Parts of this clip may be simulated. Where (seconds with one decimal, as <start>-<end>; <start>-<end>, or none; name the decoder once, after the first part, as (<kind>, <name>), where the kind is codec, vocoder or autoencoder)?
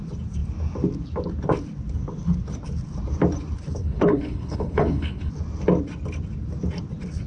3.8-5.3 (codec, HILCodec)